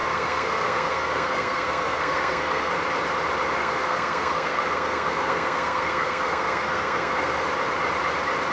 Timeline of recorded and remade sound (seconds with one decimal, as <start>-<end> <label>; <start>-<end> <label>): 0.0-2.7 remade; 2.7-3.6 recorded; 3.6-7.4 remade; 7.4-8.5 recorded